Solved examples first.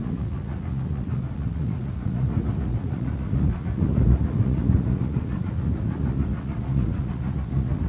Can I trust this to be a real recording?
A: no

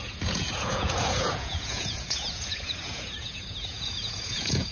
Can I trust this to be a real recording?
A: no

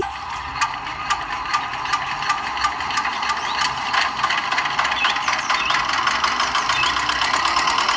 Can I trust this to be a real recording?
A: yes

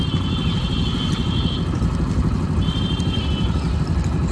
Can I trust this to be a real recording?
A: yes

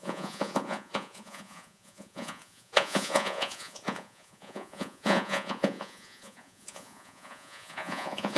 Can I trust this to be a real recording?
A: no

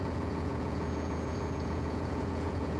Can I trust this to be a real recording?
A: no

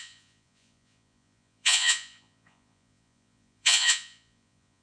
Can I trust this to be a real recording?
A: no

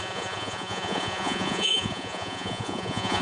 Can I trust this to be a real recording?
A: no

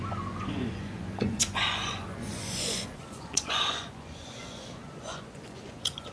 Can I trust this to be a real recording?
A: no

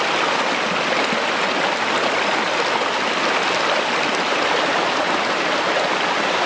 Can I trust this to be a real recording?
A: yes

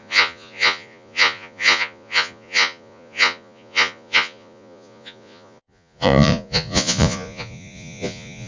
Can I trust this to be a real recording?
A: no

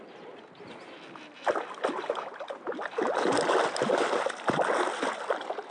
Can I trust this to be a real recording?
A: yes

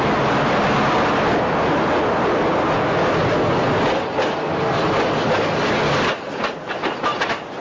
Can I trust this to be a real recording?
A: yes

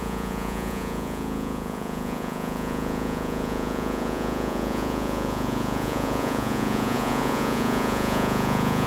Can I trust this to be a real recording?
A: no